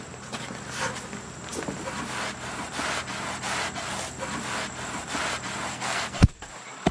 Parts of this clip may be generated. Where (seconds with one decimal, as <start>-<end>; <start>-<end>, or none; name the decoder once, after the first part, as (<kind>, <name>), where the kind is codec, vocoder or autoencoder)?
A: 5.7-6.4 (codec, SNAC)